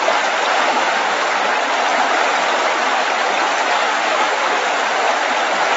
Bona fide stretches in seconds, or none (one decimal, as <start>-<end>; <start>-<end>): 0.0-0.5; 1.2-3.8; 4.7-5.8